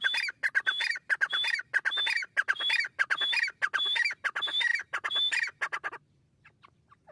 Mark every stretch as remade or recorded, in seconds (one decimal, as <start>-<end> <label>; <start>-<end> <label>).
0.0-7.1 recorded

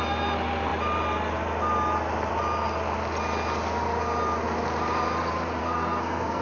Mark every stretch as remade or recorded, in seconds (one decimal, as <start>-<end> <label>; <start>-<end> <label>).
0.0-5.6 recorded; 5.6-6.4 remade

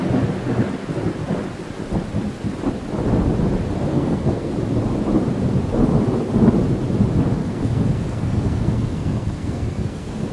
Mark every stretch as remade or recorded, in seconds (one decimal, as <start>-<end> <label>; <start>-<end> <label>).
0.0-3.9 recorded; 3.9-4.5 remade; 4.5-7.4 recorded; 7.4-10.3 remade

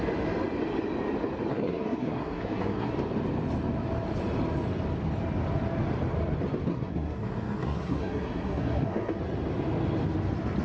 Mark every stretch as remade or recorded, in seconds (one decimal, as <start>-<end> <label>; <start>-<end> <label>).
0.0-1.5 recorded; 1.5-2.9 remade; 2.9-6.7 recorded; 6.7-9.2 remade; 9.2-10.6 recorded

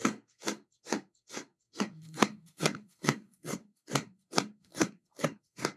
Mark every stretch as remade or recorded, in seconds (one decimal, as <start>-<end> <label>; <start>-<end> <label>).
0.0-5.8 remade